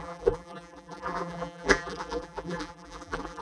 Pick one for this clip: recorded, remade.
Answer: remade